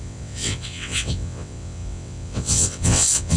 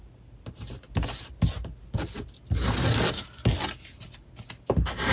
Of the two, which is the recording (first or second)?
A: second